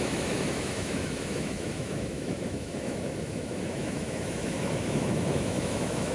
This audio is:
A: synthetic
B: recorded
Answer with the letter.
A